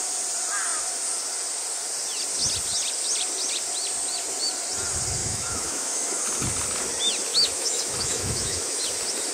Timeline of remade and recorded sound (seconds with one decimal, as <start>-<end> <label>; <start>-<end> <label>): 0.0-5.2 recorded; 5.2-6.2 remade; 6.2-7.3 recorded; 7.3-8.8 remade; 8.8-9.3 recorded